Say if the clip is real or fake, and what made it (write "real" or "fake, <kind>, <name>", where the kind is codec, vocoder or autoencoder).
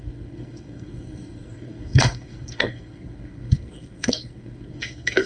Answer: fake, codec, SNAC